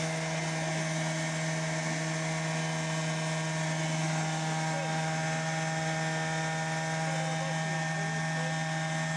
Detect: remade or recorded recorded